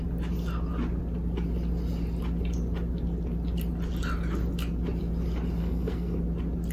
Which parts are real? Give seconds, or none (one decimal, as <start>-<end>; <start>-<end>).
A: 0.0-5.6; 6.2-6.7